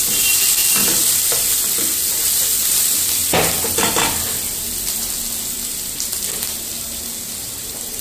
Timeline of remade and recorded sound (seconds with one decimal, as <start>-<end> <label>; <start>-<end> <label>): 0.0-3.2 remade; 3.2-6.2 recorded; 6.2-8.0 remade

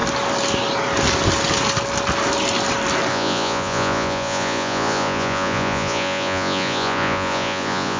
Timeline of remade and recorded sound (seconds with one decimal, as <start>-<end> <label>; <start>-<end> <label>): 0.0-3.1 recorded; 3.1-8.0 remade